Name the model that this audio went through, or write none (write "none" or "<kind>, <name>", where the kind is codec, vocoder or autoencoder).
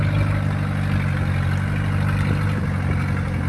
none